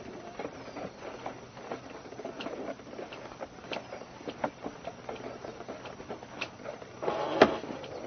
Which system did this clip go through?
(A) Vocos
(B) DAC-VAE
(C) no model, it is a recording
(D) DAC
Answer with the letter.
C